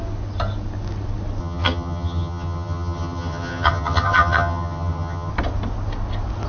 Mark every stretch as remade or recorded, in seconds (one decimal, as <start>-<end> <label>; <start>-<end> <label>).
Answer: 0.0-1.4 recorded; 1.4-5.3 remade; 5.3-6.5 recorded